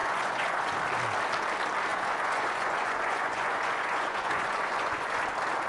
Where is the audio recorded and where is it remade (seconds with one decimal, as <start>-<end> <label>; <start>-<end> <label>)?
0.0-0.7 remade; 0.7-1.9 recorded; 1.9-5.2 remade; 5.2-5.7 recorded